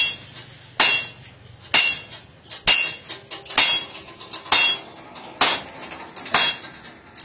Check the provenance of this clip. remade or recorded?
recorded